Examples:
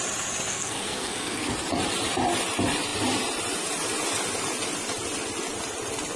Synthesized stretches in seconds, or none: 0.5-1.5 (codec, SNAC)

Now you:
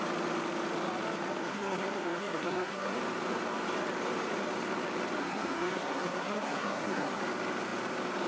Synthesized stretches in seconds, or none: 1.4-3.0 (codec, SNAC); 5.2-7.2

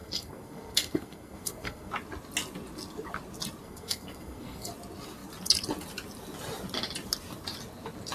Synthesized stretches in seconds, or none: 0.0-1.9 (codec, SNAC); 3.6-4.7

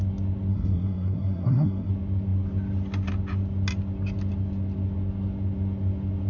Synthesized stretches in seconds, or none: 0.5-1.9 (codec, SNAC)

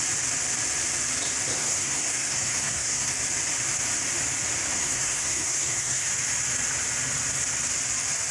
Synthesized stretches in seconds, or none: 1.6-3.1 (codec, SNAC); 4.8-6.1

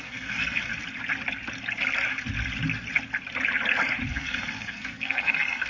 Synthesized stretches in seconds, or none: 0.0-0.7 (codec, SNAC); 4.1-5.7